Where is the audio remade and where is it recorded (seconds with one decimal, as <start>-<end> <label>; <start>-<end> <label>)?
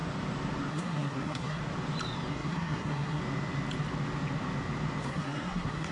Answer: 0.0-0.7 recorded; 0.7-1.6 remade; 1.6-2.3 recorded; 2.3-3.2 remade; 3.2-5.0 recorded; 5.0-5.9 remade